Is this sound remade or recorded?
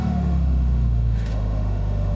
remade